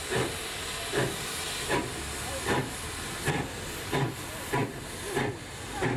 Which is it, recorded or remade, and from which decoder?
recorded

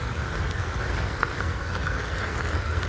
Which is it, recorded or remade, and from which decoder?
remade, codec, SNAC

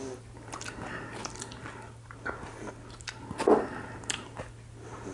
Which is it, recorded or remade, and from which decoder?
recorded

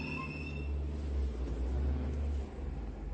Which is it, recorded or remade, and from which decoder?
recorded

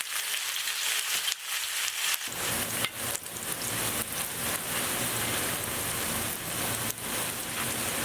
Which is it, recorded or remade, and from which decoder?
recorded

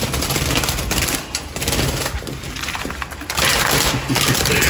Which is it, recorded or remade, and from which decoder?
recorded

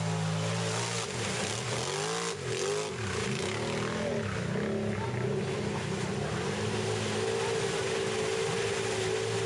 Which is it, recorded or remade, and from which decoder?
recorded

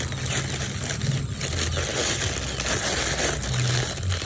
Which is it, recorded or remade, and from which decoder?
recorded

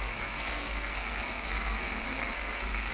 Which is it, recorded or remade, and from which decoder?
remade, codec, SNAC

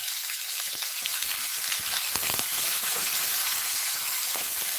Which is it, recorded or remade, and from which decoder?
remade, codec, SNAC